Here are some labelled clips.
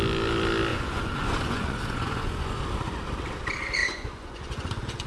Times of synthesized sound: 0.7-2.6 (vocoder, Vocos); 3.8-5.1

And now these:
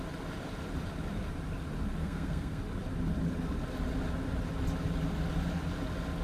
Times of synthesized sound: 2.0-2.6 (codec, SNAC)

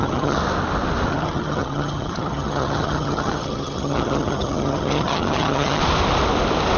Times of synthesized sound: 0.0-0.4 (vocoder, HiFi-GAN); 1.1-5.8

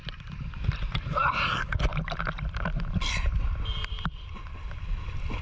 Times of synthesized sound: none

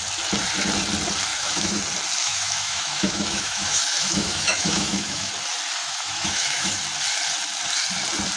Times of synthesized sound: 1.3-1.8 (autoencoder, DAC-VAE); 2.2-5.3; 5.8-6.7